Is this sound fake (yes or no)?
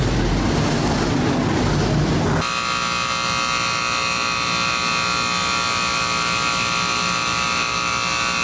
no